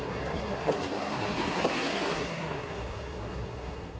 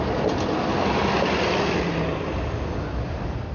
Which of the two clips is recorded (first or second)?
second